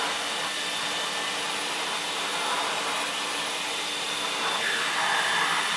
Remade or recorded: recorded